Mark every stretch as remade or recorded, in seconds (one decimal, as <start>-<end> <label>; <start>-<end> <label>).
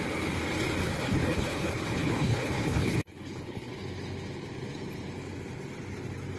0.0-0.8 recorded; 0.8-3.7 remade; 3.7-6.4 recorded